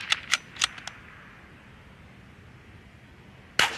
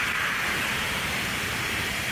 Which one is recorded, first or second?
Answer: first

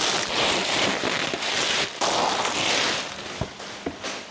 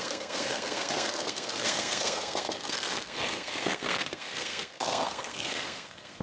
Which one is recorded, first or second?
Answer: first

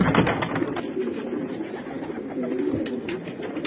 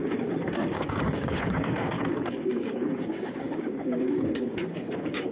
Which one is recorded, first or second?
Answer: first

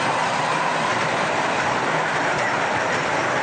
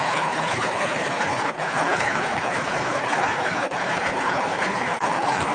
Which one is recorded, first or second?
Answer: first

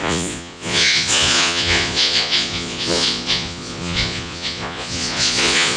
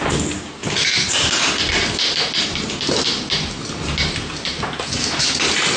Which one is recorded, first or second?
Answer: second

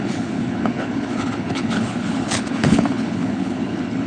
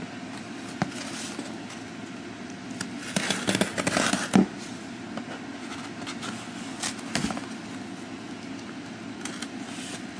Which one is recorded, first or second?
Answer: second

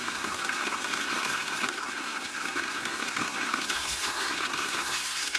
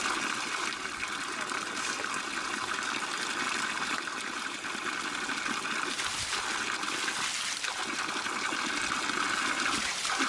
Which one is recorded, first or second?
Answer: second